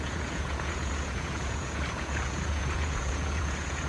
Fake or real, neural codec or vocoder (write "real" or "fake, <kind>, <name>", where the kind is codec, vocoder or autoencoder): fake, vocoder, Vocos